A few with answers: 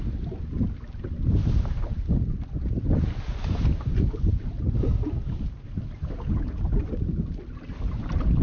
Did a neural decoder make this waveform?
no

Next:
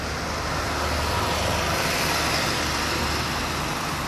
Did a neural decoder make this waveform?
no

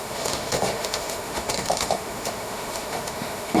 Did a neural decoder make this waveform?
yes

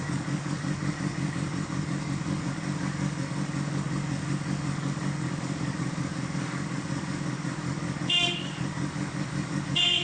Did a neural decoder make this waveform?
yes